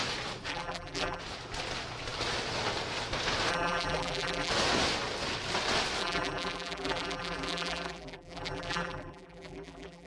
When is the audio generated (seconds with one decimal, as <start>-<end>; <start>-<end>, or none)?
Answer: 0.5-1.2; 3.5-4.5; 6.0-10.1